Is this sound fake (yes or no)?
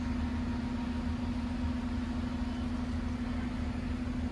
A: no